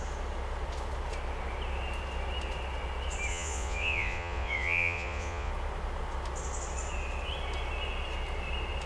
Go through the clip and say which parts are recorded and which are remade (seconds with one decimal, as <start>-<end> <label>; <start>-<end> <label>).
0.0-3.3 recorded; 3.3-5.5 remade; 5.5-8.9 recorded